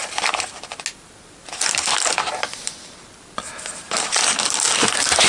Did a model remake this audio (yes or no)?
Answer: no